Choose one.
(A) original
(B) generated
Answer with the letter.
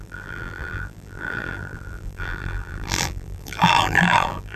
B